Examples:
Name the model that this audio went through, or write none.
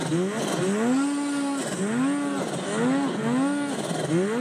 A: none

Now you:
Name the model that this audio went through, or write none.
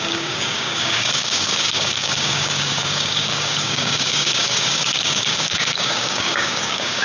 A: codec, DAC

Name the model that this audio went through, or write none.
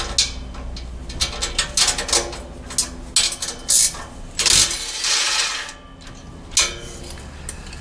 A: none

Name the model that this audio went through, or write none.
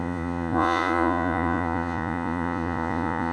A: vocoder, Vocos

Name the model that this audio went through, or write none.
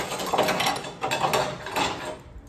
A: none